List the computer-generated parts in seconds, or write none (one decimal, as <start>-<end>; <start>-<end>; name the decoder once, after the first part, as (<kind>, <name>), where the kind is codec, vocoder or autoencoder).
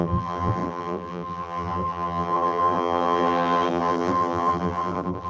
0.0-5.3 (vocoder, BigVGAN v2)